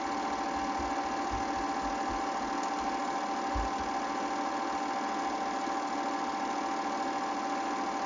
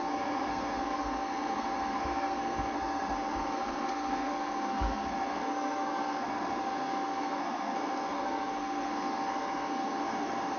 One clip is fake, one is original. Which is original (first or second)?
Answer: first